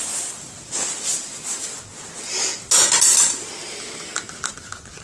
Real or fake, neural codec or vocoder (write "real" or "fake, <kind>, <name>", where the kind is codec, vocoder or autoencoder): real